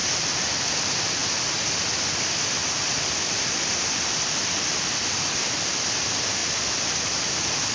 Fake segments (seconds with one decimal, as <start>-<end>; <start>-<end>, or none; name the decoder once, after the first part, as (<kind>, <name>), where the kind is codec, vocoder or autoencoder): 0.6-1.2 (vocoder, BigVGAN v2); 1.9-7.7